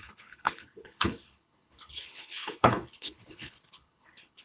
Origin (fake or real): fake